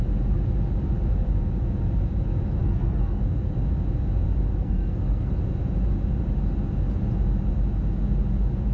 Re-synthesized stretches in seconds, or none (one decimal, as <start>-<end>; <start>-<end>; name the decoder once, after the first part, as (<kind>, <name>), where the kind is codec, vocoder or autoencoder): 2.6-3.2 (codec, SNAC); 4.5-5.3